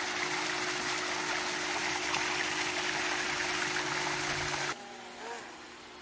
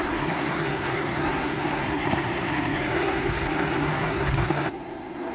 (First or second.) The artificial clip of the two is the second